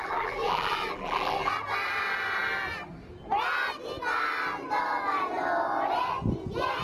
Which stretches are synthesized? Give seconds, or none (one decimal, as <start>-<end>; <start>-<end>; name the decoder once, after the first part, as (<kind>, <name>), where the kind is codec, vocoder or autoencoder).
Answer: 0.0-1.5 (vocoder, BigVGAN v2)